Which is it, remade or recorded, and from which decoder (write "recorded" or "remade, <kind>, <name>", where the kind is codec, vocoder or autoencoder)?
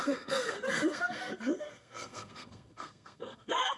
remade, codec, SNAC